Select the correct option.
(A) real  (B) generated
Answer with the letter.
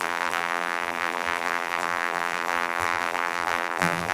B